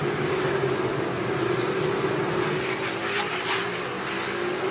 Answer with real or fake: real